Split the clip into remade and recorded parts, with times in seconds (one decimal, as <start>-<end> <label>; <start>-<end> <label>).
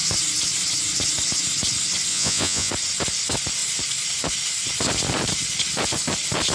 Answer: 0.0-2.1 recorded; 2.1-2.7 remade; 2.7-6.5 recorded